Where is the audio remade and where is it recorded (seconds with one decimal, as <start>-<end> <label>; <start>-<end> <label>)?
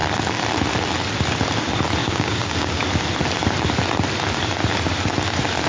0.0-2.0 recorded; 2.0-2.8 remade; 2.8-5.7 recorded